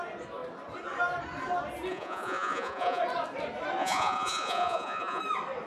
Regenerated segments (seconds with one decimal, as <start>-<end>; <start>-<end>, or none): 1.9-3.0; 3.8-5.2